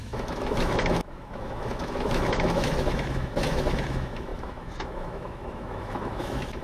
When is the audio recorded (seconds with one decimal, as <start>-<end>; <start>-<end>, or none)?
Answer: none